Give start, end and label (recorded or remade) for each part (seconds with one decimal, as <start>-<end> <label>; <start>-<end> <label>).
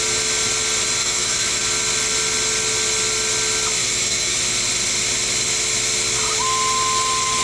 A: 0.0-1.0 recorded; 1.0-1.6 remade; 1.6-3.8 recorded; 3.8-4.4 remade; 4.4-7.4 recorded